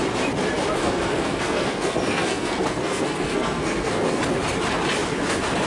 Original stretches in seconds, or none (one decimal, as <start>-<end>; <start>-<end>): 0.0-0.8; 4.2-5.7

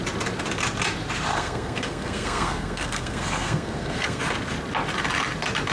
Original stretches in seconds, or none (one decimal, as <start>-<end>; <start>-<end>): 0.0-1.3; 4.2-5.7

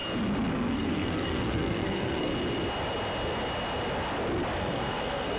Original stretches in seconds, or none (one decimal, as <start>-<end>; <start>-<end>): 0.0-0.5; 2.3-4.6